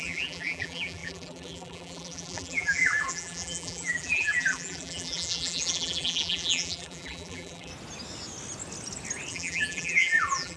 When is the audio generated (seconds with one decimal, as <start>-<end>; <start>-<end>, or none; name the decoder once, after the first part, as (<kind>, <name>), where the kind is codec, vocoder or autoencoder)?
0.0-7.7 (vocoder, BigVGAN v2); 9.3-10.6